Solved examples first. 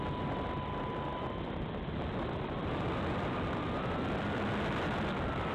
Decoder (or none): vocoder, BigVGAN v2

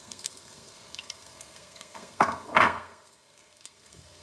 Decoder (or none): codec, SNAC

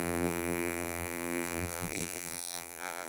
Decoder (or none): vocoder, BigVGAN v2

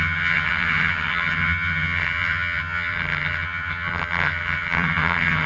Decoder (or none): vocoder, HiFi-GAN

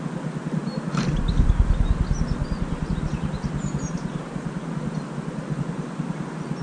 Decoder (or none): none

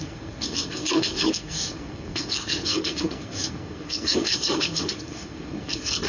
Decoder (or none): codec, SNAC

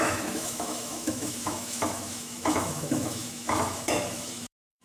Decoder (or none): autoencoder, DAC-VAE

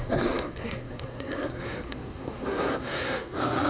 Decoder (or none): codec, SNAC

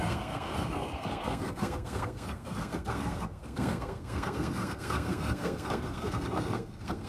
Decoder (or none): codec, SNAC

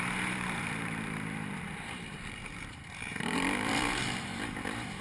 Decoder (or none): vocoder, BigVGAN v2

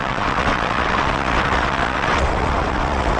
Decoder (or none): vocoder, WaveNeXt